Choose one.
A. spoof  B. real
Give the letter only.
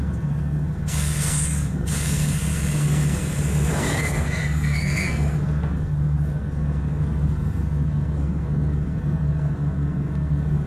A